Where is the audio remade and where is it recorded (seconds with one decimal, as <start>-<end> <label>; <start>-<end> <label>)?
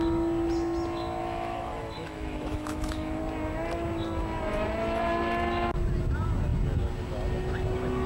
0.0-1.2 recorded; 1.2-3.2 remade; 3.2-8.1 recorded